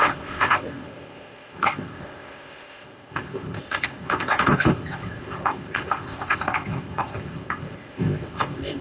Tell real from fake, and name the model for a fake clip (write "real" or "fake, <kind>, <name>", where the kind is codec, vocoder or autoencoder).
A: fake, codec, ZipCodec